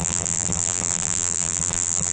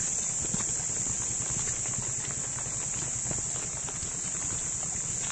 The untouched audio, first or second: second